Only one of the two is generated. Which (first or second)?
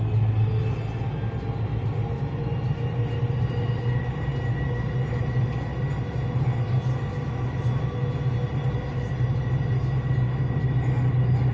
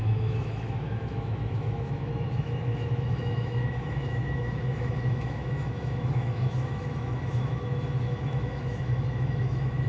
second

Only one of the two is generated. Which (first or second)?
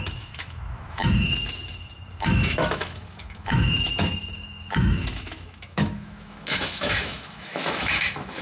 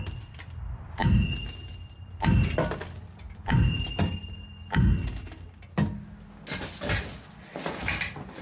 first